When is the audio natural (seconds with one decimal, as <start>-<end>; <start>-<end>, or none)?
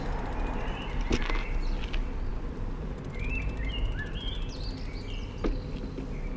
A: 0.0-6.4